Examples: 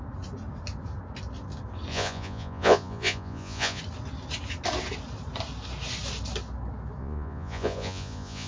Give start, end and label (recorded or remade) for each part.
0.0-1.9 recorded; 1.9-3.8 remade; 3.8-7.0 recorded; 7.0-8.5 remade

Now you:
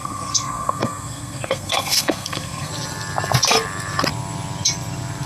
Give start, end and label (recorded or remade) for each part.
0.0-2.7 remade; 2.7-5.3 recorded

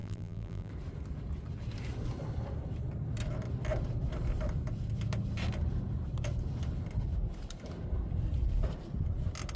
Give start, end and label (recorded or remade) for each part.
0.0-0.7 remade; 0.7-9.6 recorded

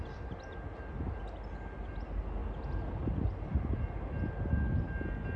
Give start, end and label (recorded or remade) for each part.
0.0-5.4 recorded